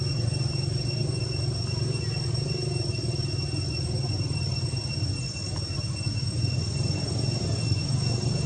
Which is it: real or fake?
real